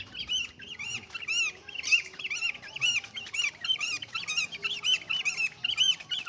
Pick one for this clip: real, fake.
real